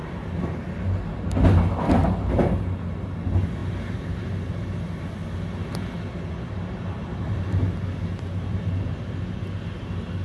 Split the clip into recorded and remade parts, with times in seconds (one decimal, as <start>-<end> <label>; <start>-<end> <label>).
0.0-10.2 recorded